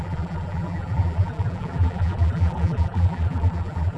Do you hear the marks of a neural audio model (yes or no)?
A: yes